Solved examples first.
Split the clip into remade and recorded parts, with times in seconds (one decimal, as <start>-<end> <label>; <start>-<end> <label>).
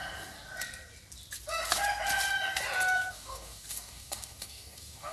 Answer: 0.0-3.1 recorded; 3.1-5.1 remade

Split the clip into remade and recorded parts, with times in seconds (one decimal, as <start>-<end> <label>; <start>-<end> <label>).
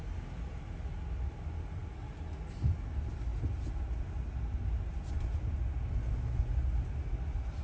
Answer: 0.0-7.6 recorded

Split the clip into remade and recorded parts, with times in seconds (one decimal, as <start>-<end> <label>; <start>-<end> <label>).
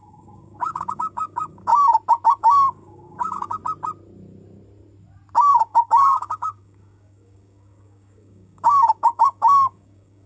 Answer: 0.0-1.7 remade; 1.7-2.4 recorded; 2.4-3.6 remade; 3.6-5.5 recorded; 5.5-10.3 remade